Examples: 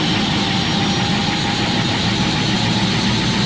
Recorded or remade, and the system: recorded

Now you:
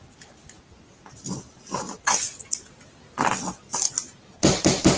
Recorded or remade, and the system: recorded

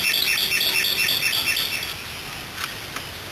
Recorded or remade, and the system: recorded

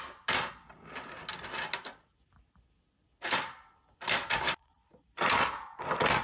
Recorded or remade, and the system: recorded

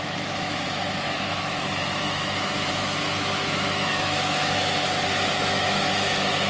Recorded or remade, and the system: remade, autoencoder, DAC-VAE